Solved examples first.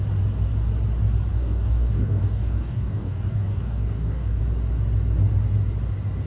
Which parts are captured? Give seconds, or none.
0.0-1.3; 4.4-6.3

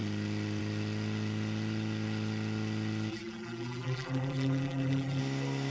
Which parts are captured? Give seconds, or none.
0.0-3.1; 5.2-5.7

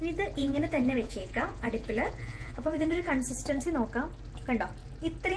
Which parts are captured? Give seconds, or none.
0.0-0.4; 3.1-5.4